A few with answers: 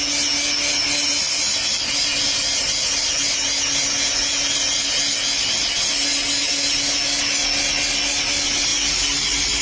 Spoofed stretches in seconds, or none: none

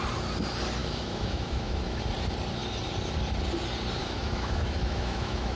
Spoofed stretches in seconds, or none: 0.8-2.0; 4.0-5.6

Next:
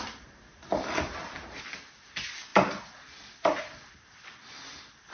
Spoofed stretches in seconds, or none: none

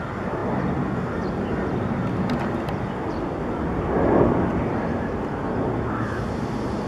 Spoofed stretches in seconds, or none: none

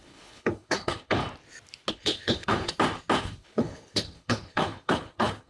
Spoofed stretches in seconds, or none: 0.0-1.2; 1.9-2.7; 3.2-5.5